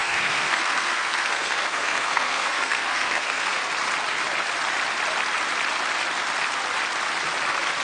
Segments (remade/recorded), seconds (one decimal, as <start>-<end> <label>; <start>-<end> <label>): 0.0-3.7 remade; 3.7-7.8 recorded